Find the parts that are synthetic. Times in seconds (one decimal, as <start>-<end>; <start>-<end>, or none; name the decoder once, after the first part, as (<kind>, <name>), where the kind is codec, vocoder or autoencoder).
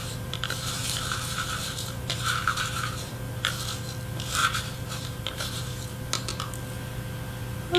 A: 0.0-3.1 (vocoder, BigVGAN v2); 4.4-6.0